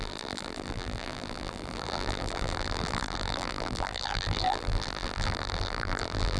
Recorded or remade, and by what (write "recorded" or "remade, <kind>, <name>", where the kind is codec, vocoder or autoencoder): remade, vocoder, BigVGAN v2